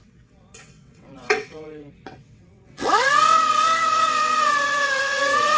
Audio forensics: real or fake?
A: fake